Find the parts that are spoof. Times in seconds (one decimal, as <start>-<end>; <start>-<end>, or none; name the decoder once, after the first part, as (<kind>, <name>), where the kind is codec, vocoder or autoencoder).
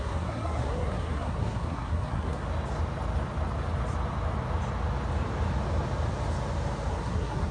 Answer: 0.0-2.4 (codec, SNAC); 6.9-7.5